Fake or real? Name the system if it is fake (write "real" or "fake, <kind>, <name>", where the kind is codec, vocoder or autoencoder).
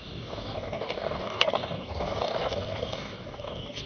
fake, codec, DAC